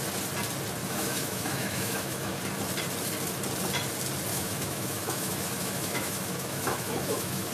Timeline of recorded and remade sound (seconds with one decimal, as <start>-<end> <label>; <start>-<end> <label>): 0.0-0.8 recorded; 0.8-2.4 remade; 2.4-4.3 recorded; 4.3-7.5 remade